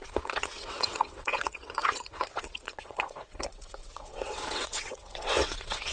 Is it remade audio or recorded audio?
remade